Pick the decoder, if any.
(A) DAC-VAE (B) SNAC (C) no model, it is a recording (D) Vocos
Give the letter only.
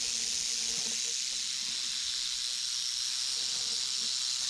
C